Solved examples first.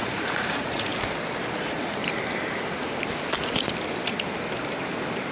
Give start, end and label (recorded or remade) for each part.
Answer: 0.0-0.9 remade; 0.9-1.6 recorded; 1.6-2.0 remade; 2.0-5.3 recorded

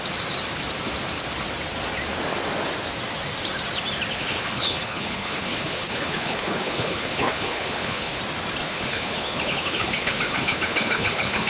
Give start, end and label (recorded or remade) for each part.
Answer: 0.0-4.1 recorded; 4.1-8.2 remade; 8.2-8.6 recorded; 8.6-11.5 remade

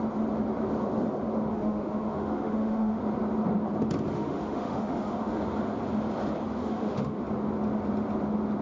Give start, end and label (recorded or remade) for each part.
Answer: 0.0-1.5 recorded; 1.5-3.0 remade; 3.0-4.1 recorded; 4.1-5.4 remade; 5.4-6.6 recorded; 6.6-7.2 remade; 7.2-8.6 recorded

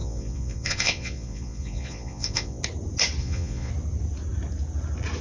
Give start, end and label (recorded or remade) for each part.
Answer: 0.0-2.6 remade; 2.6-3.2 recorded; 3.2-3.7 remade; 3.7-5.2 recorded

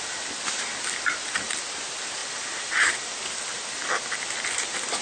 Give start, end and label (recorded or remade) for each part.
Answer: 0.0-5.0 recorded